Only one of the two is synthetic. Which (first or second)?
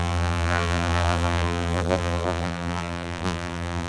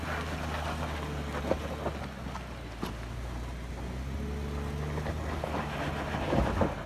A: first